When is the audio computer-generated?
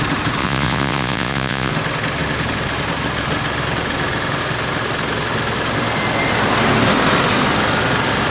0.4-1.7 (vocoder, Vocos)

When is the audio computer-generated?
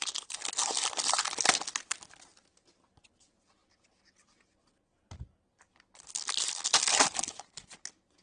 none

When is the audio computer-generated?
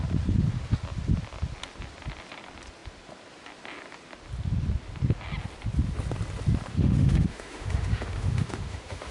6.7-9.1 (autoencoder, DAC-VAE)